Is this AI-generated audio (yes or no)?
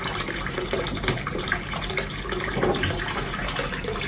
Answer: yes